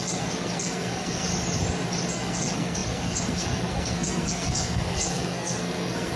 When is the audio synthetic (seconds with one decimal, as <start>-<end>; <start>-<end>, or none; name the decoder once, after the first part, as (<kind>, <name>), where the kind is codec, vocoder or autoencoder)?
0.0-1.3 (codec, SNAC); 2.1-6.2